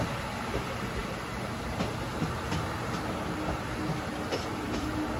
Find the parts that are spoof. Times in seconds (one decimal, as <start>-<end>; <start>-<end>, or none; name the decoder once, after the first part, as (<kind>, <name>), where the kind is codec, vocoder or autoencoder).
none